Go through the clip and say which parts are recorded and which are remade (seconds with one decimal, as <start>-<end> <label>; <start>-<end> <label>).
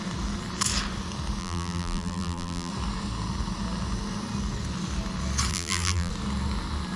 0.0-1.4 recorded; 1.4-2.7 remade; 2.7-5.5 recorded; 5.5-6.1 remade; 6.1-7.0 recorded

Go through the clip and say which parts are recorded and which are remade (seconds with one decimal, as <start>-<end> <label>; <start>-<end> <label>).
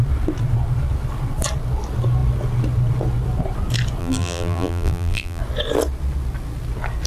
0.0-4.0 recorded; 4.0-5.4 remade; 5.4-7.1 recorded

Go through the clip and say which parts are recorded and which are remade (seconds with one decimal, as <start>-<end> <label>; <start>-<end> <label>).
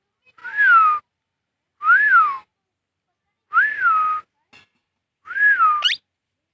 0.0-0.4 remade; 0.4-1.0 recorded; 1.0-2.5 remade; 2.5-6.5 recorded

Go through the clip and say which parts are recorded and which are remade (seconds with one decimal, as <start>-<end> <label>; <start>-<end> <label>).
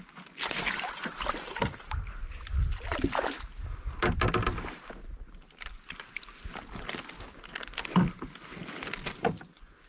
0.0-9.9 recorded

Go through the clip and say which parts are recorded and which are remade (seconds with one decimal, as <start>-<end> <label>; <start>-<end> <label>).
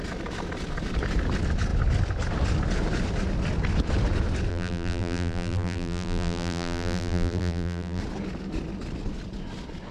0.0-4.5 recorded; 4.5-8.0 remade; 8.0-9.9 recorded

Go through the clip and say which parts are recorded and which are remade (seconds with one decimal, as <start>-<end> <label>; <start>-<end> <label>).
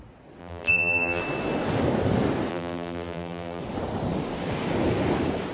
0.0-0.4 recorded; 0.4-1.2 remade; 1.2-2.5 recorded; 2.5-3.6 remade; 3.6-5.5 recorded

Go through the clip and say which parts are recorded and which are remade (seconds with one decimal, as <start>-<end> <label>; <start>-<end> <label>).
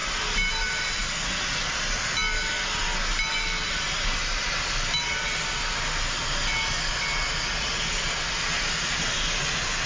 0.0-0.5 remade; 0.5-9.9 recorded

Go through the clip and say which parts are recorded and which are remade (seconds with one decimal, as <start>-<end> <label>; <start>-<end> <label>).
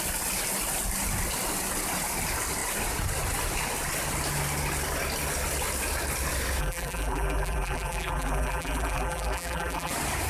0.0-6.6 recorded; 6.6-9.9 remade; 9.9-10.3 recorded